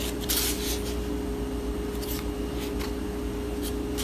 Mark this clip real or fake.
real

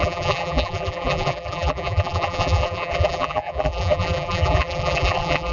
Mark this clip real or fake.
fake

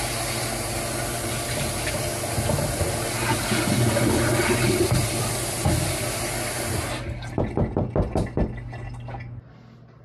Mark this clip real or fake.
real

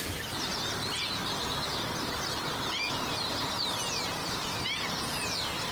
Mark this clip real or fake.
real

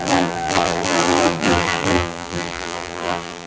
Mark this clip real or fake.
fake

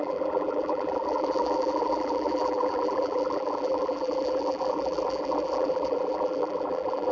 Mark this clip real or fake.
fake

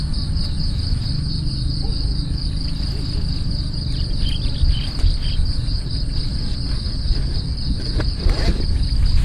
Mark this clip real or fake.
real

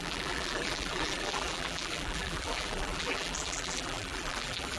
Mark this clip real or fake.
fake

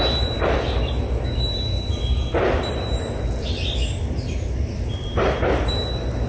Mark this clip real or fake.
fake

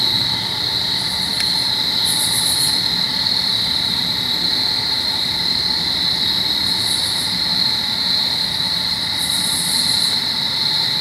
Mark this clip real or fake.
fake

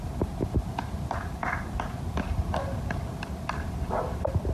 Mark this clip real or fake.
real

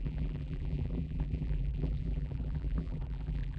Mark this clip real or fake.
fake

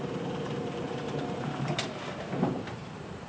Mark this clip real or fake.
fake